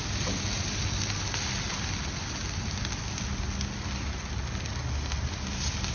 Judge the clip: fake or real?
real